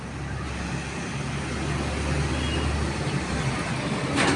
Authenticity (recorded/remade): recorded